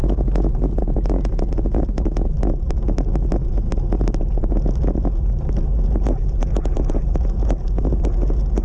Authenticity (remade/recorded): recorded